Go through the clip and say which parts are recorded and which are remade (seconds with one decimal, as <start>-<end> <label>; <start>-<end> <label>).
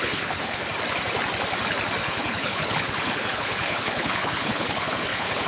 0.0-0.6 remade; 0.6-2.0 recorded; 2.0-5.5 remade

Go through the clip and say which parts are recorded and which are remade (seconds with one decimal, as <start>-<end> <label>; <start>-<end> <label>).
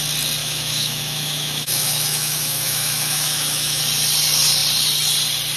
0.0-0.4 recorded; 0.4-3.8 remade; 3.8-5.6 recorded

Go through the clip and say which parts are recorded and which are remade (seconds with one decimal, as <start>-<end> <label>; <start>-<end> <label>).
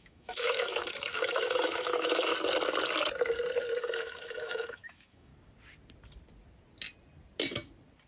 0.0-2.3 remade; 2.3-3.8 recorded; 3.8-5.3 remade; 5.3-8.1 recorded